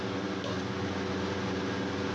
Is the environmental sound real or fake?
real